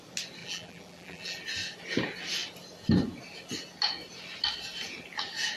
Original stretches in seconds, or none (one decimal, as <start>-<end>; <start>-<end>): 0.0-0.4; 1.4-5.6